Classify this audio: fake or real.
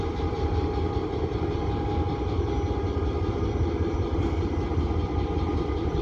real